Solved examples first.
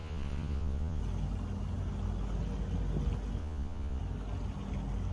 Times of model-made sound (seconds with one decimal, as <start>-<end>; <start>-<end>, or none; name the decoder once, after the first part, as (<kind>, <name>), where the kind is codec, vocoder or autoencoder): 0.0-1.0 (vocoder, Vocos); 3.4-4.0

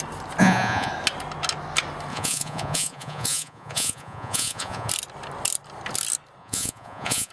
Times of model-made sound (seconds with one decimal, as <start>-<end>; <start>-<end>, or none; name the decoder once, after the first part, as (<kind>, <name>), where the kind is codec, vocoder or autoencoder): 0.4-0.9 (vocoder, Vocos); 2.1-4.9; 6.4-7.3

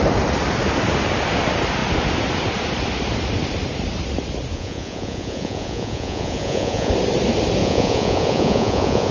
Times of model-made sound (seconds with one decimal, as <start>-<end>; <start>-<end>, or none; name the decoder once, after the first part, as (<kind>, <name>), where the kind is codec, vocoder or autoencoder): 4.5-6.9 (vocoder, Vocos); 7.6-9.1

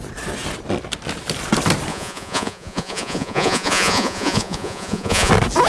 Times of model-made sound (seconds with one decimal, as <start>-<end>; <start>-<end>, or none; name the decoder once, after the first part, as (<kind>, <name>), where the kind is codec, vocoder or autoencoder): 1.9-5.3 (vocoder, Vocos)

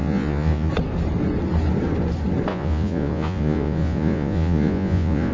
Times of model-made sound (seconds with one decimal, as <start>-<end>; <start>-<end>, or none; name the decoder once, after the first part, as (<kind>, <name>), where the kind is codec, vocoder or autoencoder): 0.0-0.7 (vocoder, Vocos); 2.5-5.3

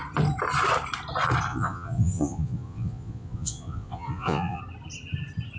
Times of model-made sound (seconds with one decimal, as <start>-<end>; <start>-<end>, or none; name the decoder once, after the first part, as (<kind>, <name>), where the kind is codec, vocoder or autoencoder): 1.5-4.6 (vocoder, Vocos)

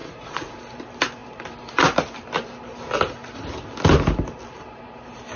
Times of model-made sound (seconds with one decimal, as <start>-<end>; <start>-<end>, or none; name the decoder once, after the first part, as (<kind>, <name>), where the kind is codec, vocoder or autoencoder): 0.0-0.6 (vocoder, Vocos)

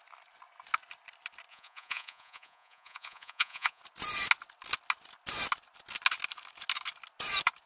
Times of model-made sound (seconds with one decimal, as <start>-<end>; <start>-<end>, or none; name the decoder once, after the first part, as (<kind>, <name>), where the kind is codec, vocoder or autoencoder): 1.5-3.8 (vocoder, Vocos)